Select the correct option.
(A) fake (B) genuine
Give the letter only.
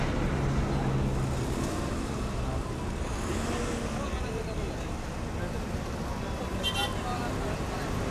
B